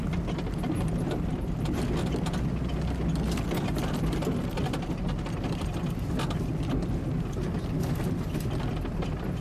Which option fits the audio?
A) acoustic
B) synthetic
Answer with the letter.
A